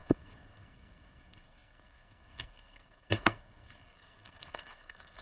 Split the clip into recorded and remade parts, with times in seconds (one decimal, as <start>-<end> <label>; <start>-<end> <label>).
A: 0.0-5.2 remade